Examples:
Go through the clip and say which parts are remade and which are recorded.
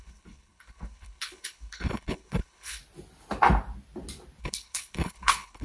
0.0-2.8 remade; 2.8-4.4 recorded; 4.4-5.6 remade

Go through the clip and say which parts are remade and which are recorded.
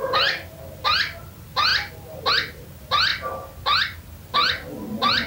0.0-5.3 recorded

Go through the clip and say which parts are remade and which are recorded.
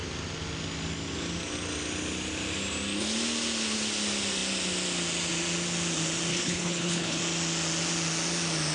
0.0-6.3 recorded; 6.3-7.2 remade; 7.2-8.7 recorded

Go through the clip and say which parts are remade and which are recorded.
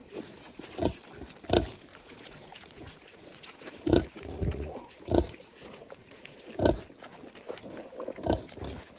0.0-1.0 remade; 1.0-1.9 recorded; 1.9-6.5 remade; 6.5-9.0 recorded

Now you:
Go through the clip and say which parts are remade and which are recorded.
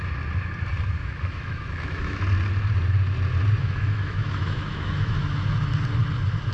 0.0-1.0 recorded; 1.0-2.2 remade; 2.2-3.6 recorded; 3.6-5.2 remade; 5.2-6.5 recorded